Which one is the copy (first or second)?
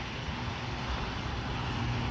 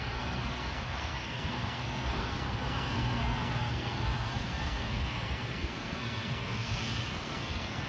second